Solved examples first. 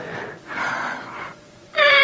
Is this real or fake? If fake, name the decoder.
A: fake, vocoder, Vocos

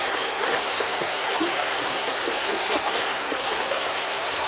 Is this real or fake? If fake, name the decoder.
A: fake, codec, SNAC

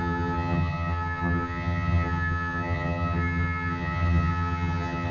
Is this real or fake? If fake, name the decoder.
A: fake, vocoder, HiFi-GAN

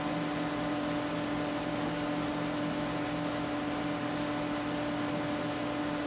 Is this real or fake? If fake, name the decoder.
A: real